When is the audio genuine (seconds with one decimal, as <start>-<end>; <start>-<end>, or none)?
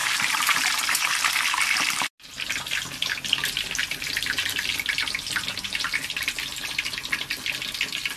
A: 1.1-8.2